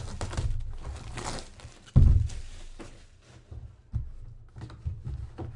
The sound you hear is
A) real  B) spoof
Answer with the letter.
A